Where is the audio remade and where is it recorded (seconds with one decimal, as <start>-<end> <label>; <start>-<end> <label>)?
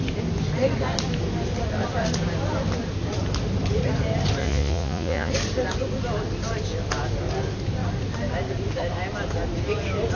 0.0-4.4 recorded; 4.4-5.3 remade; 5.3-10.2 recorded